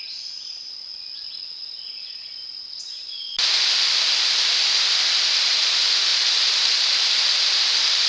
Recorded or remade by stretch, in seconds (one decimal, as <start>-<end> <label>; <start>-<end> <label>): 0.0-8.1 remade